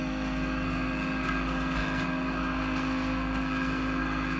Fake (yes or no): yes